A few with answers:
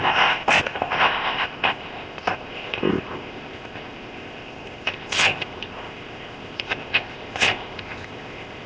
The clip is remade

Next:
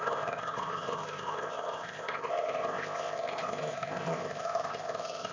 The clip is remade